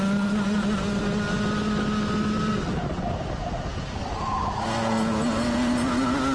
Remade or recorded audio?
recorded